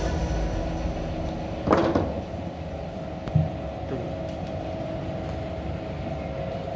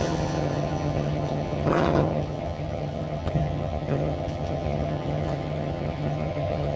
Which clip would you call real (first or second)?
first